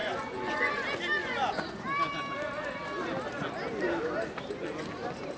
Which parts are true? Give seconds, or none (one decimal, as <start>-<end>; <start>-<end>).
0.7-1.2; 1.8-5.4